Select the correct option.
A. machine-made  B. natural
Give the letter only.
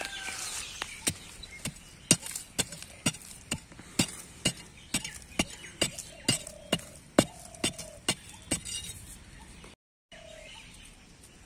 B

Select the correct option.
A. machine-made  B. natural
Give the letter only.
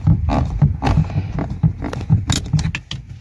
B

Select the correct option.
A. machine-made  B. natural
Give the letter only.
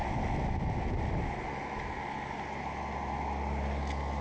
B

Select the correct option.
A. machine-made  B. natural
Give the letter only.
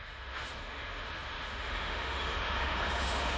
A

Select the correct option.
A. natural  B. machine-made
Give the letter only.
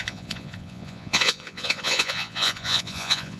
B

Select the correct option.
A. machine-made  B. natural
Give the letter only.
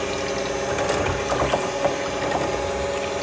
B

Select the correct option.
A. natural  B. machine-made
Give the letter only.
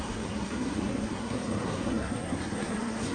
B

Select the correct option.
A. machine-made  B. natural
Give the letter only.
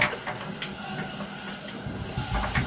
B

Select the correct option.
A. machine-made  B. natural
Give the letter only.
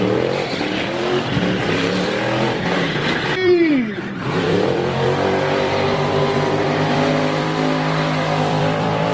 A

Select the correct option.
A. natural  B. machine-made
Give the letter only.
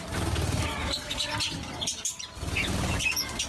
A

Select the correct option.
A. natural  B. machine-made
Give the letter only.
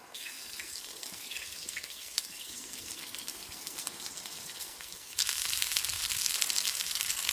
B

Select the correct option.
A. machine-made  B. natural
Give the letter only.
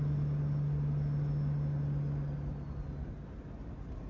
B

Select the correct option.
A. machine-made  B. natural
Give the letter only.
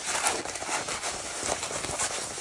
B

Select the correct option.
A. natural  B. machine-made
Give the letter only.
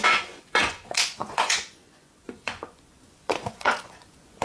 B